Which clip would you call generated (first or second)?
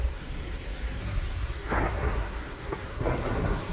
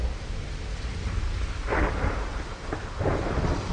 first